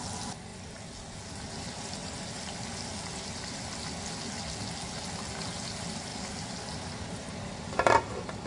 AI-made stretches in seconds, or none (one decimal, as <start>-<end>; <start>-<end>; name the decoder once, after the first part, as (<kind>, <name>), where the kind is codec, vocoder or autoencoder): none